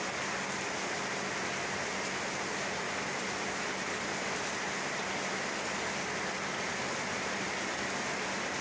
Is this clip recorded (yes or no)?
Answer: yes